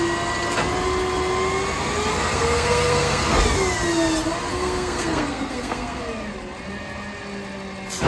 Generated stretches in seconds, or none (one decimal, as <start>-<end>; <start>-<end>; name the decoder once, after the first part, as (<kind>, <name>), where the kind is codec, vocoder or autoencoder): 2.1-3.4 (codec, SNAC); 4.5-6.0